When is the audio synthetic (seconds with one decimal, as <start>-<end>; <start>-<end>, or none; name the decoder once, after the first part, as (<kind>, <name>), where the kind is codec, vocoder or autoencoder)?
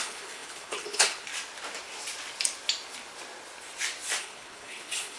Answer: 0.0-1.3 (codec, HILCodec); 4.2-5.2